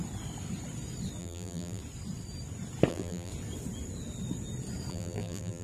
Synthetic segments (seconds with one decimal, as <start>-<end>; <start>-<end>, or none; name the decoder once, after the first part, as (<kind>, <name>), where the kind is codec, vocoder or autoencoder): 1.2-1.8 (vocoder, BigVGAN v2); 2.9-3.3; 4.9-5.6